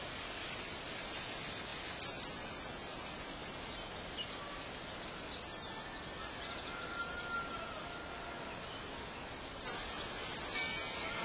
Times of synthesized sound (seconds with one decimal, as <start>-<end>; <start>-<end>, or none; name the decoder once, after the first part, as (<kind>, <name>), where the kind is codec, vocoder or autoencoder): none